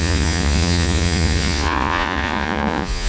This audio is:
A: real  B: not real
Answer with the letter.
B